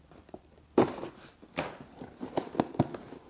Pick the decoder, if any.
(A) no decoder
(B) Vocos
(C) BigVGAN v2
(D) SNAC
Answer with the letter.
A